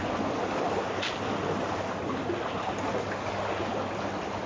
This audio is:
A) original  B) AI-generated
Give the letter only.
A